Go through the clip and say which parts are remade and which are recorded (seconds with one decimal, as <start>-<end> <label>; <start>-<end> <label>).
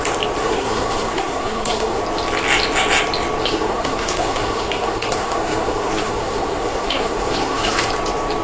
0.0-0.4 recorded; 0.4-2.0 remade; 2.0-3.4 recorded; 3.4-7.9 remade; 7.9-8.4 recorded